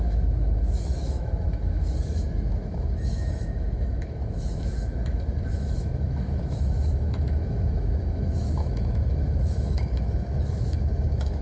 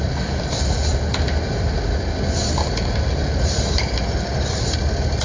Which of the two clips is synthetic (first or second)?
first